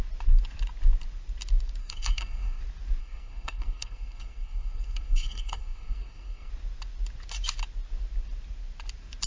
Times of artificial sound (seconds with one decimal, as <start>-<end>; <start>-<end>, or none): 1.8-2.6; 3.0-6.5

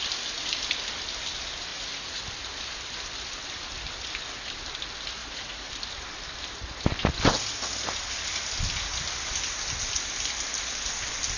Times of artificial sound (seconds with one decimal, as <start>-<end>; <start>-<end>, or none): 1.7-2.2; 5.2-5.7

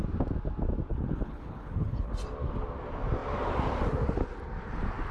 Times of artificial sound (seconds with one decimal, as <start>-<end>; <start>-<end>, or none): 0.9-2.1

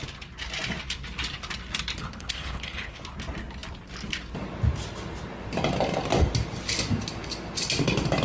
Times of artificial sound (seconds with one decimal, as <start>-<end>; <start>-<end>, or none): 2.0-3.0

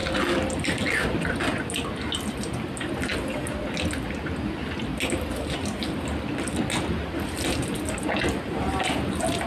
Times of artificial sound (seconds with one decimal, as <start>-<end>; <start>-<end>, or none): none

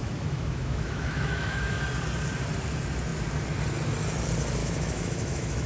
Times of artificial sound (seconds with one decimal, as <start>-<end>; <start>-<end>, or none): 0.0-1.8; 4.6-5.7

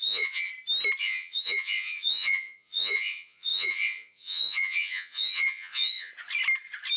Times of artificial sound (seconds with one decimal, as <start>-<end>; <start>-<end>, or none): 0.0-0.5; 1.0-6.1

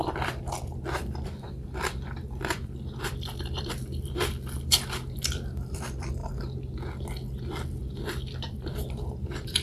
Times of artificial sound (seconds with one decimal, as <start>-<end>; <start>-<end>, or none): 0.0-6.2; 7.8-9.6